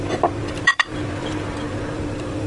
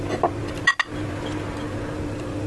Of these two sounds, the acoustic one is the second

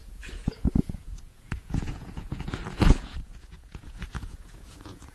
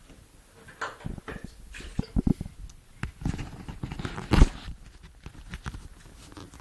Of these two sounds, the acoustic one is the second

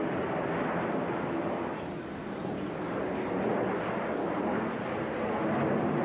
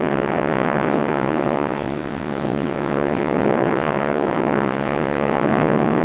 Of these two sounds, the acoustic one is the first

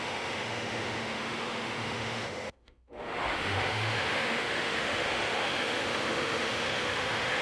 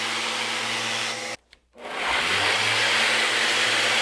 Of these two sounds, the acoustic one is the second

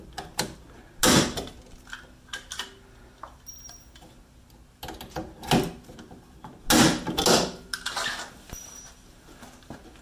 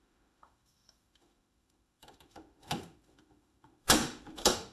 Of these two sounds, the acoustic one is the first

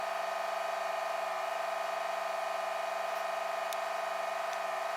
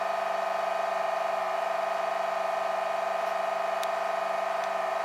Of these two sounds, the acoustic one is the first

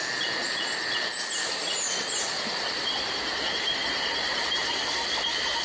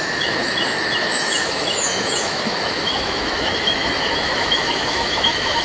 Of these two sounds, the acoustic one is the first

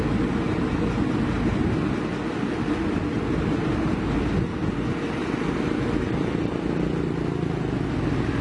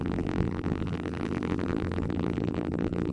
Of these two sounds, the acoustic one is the first